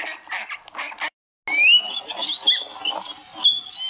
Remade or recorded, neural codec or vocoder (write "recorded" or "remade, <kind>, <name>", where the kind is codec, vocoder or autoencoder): recorded